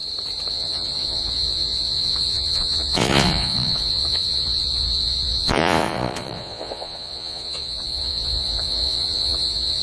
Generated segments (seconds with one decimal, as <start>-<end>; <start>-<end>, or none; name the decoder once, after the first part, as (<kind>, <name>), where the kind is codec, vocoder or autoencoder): 0.5-9.8 (vocoder, Vocos)